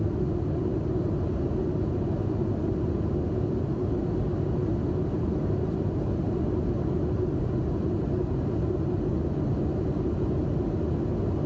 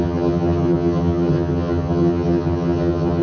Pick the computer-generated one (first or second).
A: second